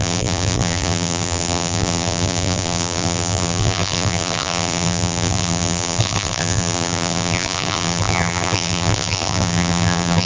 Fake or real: fake